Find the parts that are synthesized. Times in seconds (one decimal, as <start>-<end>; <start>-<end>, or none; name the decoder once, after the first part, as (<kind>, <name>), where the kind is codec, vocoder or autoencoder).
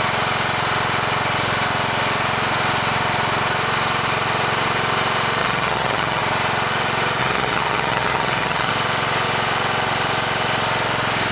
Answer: 5.4-6.2 (vocoder, HiFi-GAN); 7.2-8.7